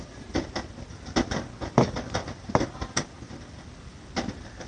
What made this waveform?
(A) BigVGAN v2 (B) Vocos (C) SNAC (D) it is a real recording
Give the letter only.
D